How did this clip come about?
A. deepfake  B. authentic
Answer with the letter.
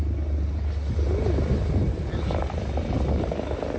B